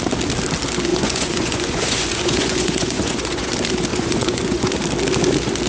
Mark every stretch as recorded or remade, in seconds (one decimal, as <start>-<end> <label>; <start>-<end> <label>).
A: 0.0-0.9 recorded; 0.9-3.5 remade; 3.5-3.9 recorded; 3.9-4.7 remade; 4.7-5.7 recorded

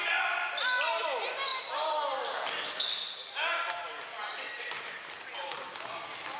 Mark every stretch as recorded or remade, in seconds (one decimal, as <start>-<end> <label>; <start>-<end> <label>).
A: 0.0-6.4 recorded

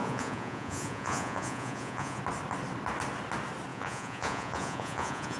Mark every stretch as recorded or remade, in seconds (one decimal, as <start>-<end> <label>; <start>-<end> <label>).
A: 0.0-2.2 remade; 2.2-3.7 recorded; 3.7-5.4 remade

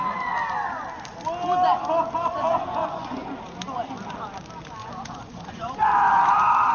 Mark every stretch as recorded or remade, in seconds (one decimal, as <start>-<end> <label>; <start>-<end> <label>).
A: 0.0-2.5 recorded; 2.5-3.3 remade; 3.3-4.8 recorded; 4.8-5.9 remade; 5.9-6.7 recorded

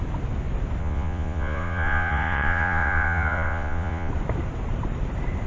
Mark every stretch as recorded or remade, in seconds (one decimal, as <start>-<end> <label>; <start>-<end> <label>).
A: 0.0-0.8 recorded; 0.8-4.1 remade; 4.1-5.5 recorded

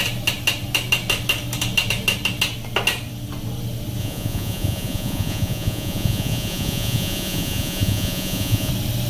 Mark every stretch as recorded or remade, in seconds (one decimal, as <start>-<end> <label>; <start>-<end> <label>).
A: 0.0-4.0 recorded; 4.0-8.7 remade; 8.7-9.1 recorded

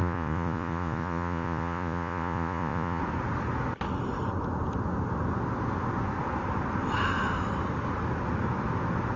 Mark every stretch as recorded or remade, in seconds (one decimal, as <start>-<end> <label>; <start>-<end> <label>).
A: 0.0-3.0 remade; 3.0-9.2 recorded

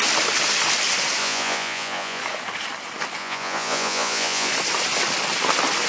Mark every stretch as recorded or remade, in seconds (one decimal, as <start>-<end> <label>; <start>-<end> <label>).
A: 0.0-1.2 recorded; 1.2-2.2 remade; 2.2-3.2 recorded; 3.2-4.5 remade; 4.5-5.9 recorded